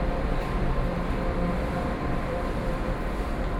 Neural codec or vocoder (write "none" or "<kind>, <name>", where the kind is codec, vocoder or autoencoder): vocoder, BigVGAN v2